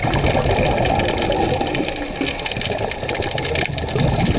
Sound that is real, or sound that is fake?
real